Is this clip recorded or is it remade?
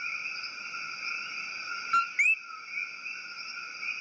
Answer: recorded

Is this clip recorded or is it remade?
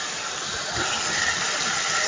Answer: recorded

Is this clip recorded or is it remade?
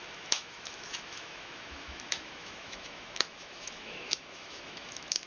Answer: remade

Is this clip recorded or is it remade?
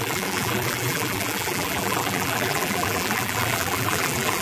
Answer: remade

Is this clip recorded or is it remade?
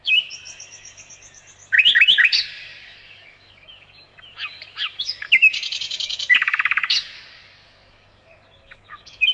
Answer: remade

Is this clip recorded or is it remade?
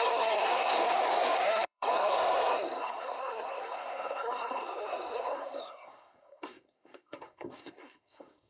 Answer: remade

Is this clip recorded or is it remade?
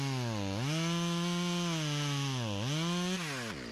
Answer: recorded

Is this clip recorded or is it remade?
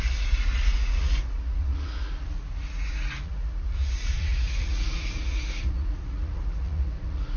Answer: remade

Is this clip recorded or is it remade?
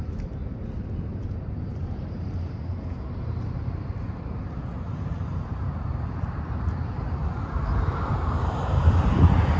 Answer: remade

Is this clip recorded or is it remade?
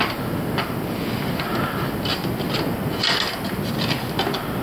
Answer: recorded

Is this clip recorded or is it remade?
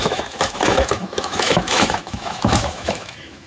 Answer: remade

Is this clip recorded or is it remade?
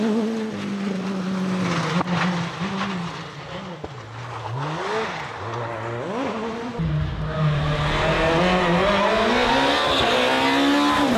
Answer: recorded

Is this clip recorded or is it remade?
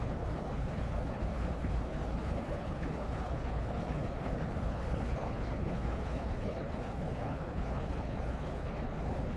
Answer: remade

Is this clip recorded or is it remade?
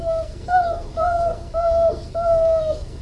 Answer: remade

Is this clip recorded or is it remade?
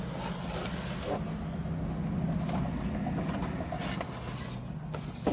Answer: recorded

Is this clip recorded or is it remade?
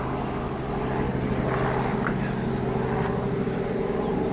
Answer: recorded